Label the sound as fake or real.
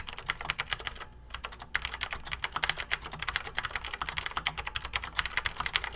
real